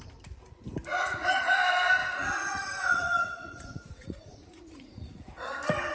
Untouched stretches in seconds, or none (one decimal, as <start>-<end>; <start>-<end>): 0.0-0.9; 1.6-2.0; 5.5-5.9